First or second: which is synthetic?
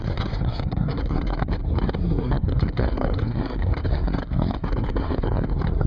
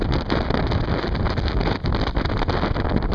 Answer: first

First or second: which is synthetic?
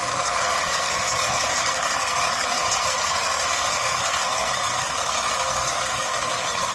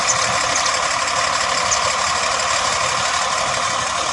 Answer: first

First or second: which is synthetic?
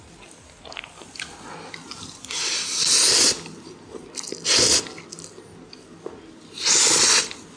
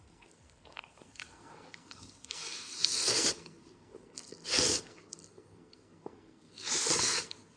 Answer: second